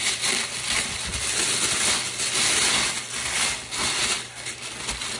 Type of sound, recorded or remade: recorded